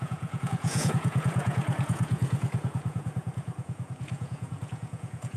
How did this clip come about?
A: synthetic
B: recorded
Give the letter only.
A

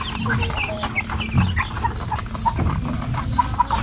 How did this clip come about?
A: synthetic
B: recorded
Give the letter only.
B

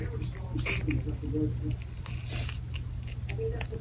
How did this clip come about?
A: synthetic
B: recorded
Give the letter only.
B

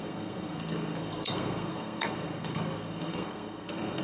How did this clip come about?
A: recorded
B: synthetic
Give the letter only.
B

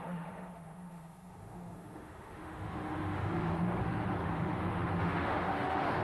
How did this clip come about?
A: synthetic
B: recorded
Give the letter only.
A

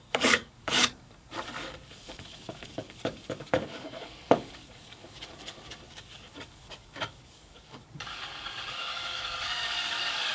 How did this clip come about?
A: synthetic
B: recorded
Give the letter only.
A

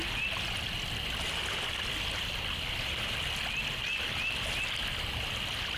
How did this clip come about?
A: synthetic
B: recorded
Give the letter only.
B